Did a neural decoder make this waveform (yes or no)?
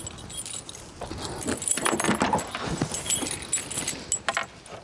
no